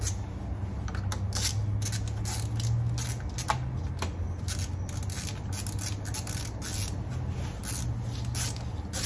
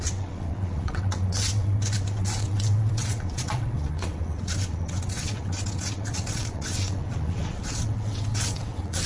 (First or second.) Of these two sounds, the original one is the first